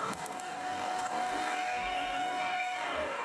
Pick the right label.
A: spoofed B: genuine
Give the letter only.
A